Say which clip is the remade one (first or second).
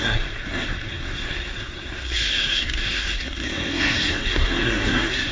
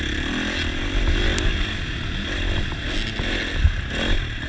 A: first